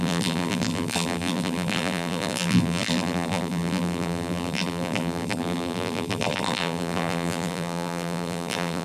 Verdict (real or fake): fake